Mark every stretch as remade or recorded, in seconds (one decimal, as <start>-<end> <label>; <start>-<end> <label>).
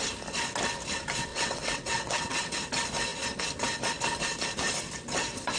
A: 0.0-1.3 recorded; 1.3-2.5 remade; 2.5-5.6 recorded